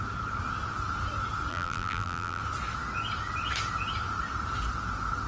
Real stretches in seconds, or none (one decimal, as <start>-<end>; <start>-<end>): 0.0-1.5; 2.4-5.3